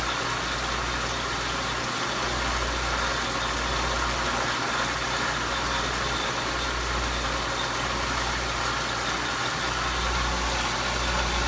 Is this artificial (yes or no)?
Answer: no